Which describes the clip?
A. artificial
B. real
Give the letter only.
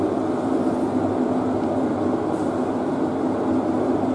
B